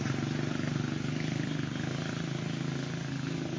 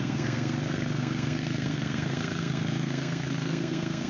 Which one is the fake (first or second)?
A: second